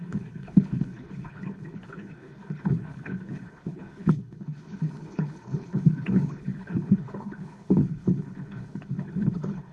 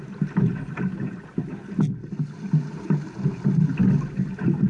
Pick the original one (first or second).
second